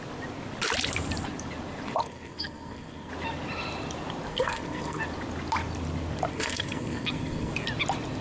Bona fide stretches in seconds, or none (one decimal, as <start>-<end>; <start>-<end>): 0.0-2.0; 3.1-4.3; 5.0-6.3; 7.5-8.2